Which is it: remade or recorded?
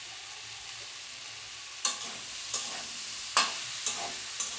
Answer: recorded